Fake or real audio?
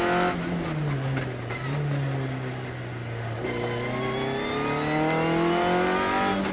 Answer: real